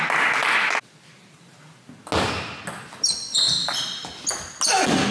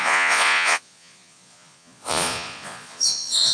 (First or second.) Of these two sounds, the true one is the first